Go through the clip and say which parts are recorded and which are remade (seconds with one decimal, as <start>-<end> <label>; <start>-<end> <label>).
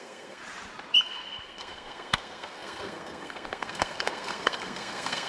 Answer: 0.0-0.4 remade; 0.4-1.0 recorded; 1.0-5.3 remade